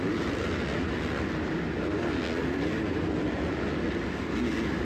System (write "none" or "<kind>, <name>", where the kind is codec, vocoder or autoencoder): none